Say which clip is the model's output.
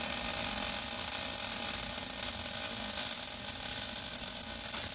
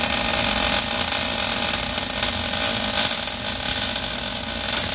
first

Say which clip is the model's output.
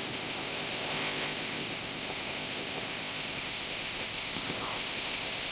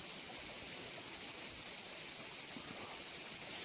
first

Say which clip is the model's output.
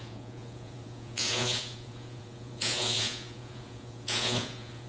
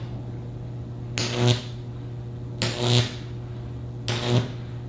first